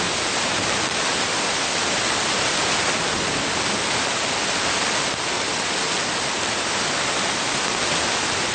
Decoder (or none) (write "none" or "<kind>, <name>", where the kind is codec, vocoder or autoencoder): none